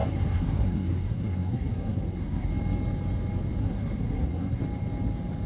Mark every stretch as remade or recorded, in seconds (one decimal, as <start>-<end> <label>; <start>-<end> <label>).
0.0-2.5 remade; 2.5-3.6 recorded; 3.6-4.6 remade; 4.6-5.5 recorded